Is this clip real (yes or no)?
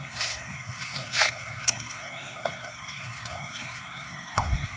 no